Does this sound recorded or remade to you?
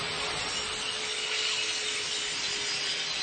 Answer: recorded